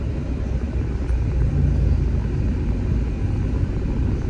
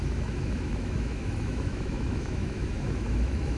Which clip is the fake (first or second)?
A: second